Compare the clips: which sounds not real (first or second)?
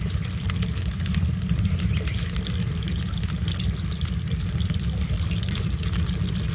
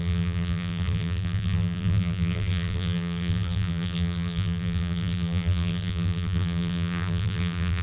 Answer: second